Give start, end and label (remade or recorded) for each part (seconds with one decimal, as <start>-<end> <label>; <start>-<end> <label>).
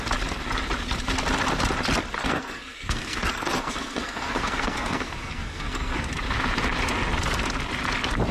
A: 0.0-2.2 recorded; 2.2-6.1 remade; 6.1-8.3 recorded